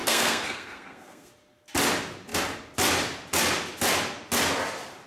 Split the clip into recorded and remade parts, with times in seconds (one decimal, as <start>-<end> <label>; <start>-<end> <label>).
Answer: 0.0-1.3 remade; 1.3-5.1 recorded

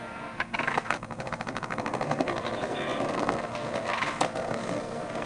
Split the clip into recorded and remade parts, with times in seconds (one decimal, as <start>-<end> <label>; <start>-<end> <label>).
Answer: 0.0-5.3 remade

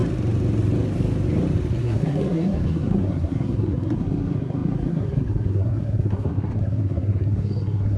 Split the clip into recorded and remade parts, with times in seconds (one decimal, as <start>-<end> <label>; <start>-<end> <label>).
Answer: 0.0-1.8 recorded; 1.8-8.0 remade